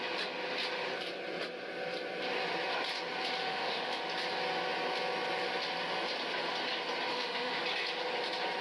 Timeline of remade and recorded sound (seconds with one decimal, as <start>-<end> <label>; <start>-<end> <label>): 0.0-3.4 recorded; 3.4-4.0 remade; 4.0-7.1 recorded; 7.1-7.6 remade; 7.6-8.6 recorded